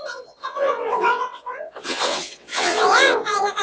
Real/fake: fake